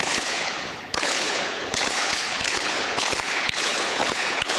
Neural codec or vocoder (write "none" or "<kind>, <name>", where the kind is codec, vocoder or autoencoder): codec, HILCodec